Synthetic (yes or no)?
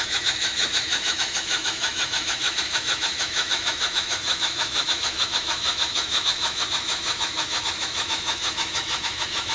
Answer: yes